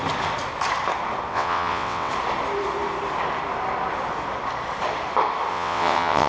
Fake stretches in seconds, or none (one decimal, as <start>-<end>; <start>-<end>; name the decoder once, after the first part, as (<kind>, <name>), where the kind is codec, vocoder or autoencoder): 1.3-2.1 (vocoder, WaveNeXt); 5.5-6.3